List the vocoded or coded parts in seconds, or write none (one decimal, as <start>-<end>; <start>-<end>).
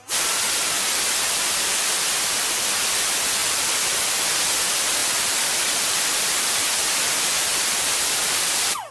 3.4-4.1; 5.0-7.2